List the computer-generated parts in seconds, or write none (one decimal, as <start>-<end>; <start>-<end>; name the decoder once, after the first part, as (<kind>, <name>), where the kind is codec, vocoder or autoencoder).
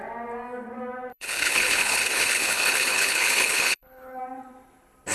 1.1-4.2 (codec, HILCodec)